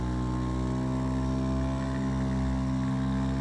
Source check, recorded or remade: recorded